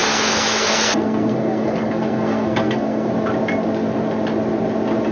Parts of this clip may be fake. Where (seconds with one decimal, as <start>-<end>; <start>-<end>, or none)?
0.0-3.1